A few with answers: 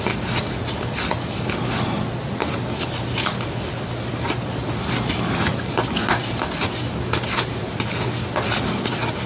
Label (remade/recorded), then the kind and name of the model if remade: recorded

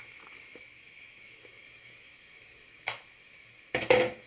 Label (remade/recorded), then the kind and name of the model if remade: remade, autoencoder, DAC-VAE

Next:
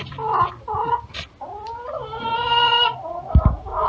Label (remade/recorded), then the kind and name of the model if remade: recorded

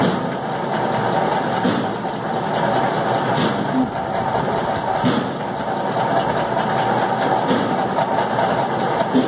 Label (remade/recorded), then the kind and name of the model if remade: recorded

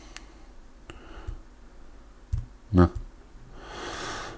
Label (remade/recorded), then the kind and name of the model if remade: recorded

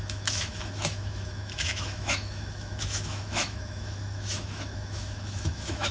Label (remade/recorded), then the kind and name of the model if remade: remade, autoencoder, DAC-VAE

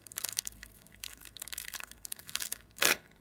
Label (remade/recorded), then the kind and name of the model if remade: remade, codec, SNAC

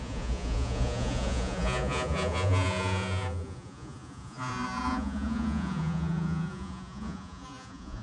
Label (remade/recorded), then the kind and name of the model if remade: remade, vocoder, Vocos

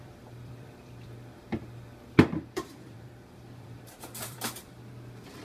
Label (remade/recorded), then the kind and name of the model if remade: remade, vocoder, BigVGAN v2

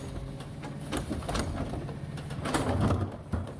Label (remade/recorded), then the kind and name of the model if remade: recorded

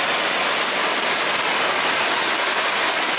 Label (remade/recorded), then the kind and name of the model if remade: recorded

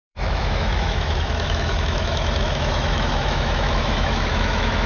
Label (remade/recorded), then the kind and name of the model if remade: remade, autoencoder, DAC-VAE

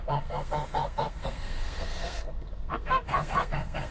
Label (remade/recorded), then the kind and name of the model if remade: remade, codec, SNAC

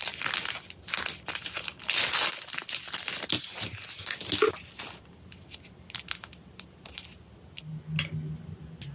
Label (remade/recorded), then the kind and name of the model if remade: recorded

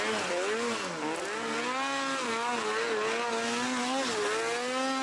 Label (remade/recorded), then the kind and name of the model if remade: recorded